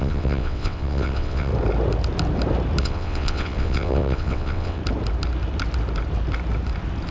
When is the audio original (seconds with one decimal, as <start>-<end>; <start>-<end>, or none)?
1.5-2.8; 4.8-7.1